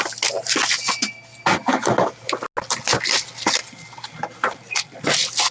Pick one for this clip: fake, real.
real